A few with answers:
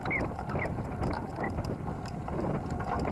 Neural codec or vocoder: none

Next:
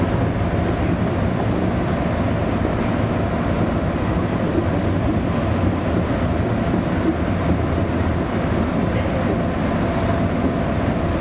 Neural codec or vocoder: none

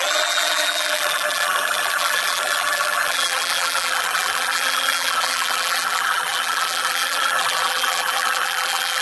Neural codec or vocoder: vocoder, BigVGAN v2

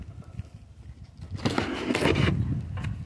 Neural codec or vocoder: none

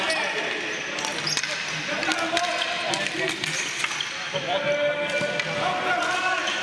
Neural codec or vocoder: none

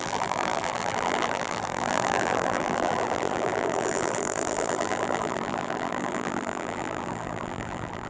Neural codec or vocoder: vocoder, BigVGAN v2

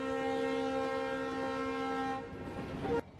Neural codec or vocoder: none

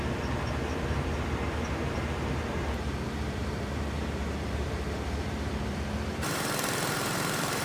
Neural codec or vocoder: vocoder, BigVGAN v2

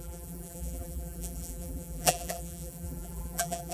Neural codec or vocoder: vocoder, BigVGAN v2